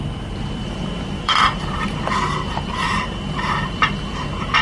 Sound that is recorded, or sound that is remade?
remade